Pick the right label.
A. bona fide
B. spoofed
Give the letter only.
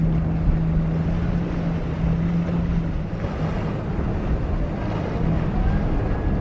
A